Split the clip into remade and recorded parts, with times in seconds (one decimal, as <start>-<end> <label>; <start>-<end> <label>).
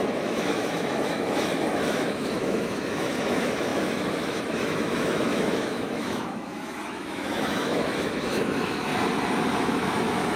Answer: 0.0-8.9 remade; 8.9-9.5 recorded; 9.5-10.4 remade